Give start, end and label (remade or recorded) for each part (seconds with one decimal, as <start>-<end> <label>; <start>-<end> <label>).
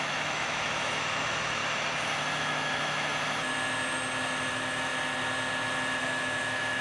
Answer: 0.0-1.6 remade; 1.6-2.4 recorded; 2.4-3.1 remade; 3.1-4.5 recorded; 4.5-4.9 remade; 4.9-6.0 recorded; 6.0-6.8 remade